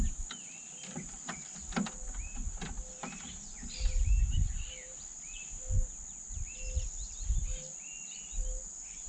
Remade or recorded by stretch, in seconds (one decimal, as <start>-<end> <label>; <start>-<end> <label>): 0.0-9.1 recorded